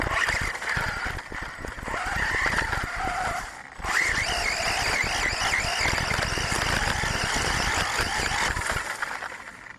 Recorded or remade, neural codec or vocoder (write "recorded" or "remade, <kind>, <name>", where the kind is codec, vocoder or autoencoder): recorded